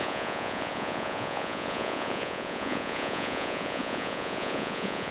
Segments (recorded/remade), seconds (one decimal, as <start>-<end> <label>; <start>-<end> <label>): 0.0-5.1 remade